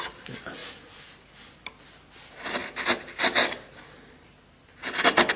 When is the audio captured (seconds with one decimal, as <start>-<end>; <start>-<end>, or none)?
0.0-5.4